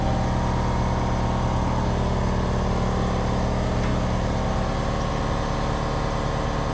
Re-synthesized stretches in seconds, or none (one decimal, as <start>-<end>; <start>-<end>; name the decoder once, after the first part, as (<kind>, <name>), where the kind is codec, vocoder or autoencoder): none